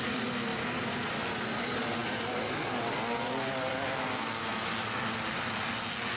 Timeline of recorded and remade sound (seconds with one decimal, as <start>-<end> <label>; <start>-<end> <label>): 0.0-6.2 recorded